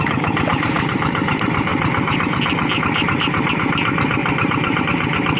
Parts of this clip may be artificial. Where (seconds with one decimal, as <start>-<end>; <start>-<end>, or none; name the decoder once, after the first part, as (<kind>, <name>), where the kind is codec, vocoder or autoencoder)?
none

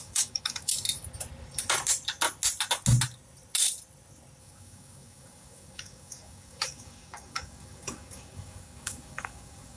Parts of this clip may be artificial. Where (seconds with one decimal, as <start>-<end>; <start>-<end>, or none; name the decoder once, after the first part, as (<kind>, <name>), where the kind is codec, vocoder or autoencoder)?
0.0-0.7 (codec, DAC); 4.4-9.8

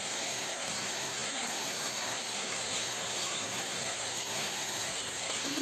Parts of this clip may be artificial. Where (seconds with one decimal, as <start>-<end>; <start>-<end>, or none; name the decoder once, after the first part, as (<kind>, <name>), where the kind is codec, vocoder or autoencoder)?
0.0-5.6 (codec, SNAC)

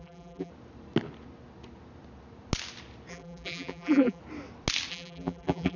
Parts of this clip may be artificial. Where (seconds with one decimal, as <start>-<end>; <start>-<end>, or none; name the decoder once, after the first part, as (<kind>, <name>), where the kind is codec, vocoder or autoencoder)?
0.0-0.5 (vocoder, BigVGAN v2); 3.1-4.2; 4.9-5.8

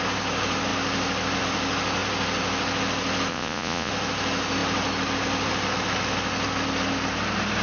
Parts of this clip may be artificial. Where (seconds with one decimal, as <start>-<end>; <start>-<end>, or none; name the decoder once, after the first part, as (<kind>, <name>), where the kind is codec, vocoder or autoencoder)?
3.3-3.9 (vocoder, Vocos)

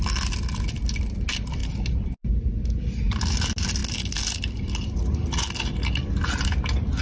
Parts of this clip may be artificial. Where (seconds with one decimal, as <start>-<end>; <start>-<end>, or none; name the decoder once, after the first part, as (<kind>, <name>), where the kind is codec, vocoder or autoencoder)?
none